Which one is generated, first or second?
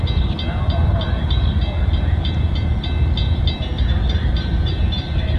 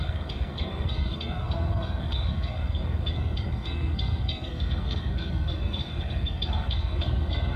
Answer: second